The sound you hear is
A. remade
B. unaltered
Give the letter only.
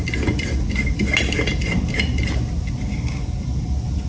B